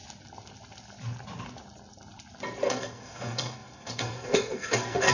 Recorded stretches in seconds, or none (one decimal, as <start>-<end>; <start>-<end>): 0.0-2.6